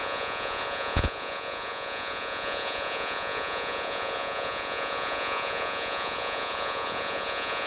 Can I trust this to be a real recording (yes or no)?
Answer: no